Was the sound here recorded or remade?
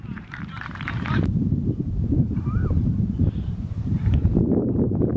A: remade